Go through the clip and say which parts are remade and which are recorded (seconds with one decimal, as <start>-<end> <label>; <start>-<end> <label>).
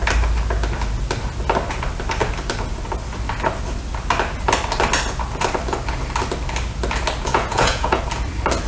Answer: 0.0-7.3 recorded; 7.3-8.0 remade; 8.0-8.7 recorded